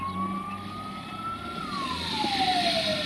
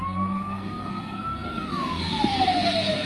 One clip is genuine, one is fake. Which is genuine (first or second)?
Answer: first